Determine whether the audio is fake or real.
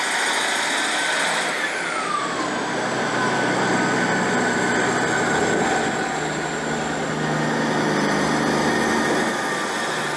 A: real